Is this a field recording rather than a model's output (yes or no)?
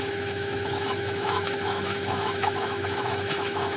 no